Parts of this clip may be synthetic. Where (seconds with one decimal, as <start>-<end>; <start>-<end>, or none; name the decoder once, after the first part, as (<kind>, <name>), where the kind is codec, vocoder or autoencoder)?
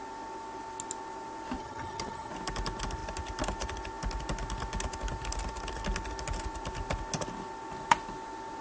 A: 1.6-2.3 (vocoder, HiFi-GAN)